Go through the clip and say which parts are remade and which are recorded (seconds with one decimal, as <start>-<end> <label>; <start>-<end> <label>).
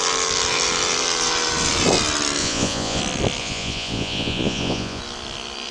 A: 0.0-2.4 recorded; 2.4-3.0 remade; 3.0-3.4 recorded; 3.4-5.0 remade; 5.0-5.7 recorded